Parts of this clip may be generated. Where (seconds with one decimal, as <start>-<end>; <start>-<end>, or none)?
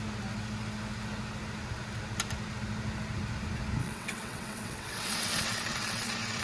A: 3.8-6.4